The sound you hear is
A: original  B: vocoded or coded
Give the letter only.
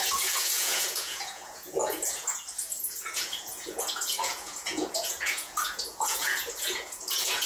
B